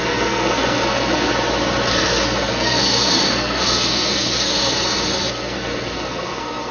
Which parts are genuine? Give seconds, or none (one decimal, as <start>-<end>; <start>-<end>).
1.3-1.9